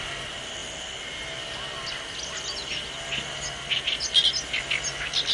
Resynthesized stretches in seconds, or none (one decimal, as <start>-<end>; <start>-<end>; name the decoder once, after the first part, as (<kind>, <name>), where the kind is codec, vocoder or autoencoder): none